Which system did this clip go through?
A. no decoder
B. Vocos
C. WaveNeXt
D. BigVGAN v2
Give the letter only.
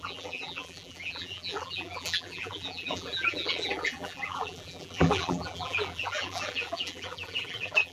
D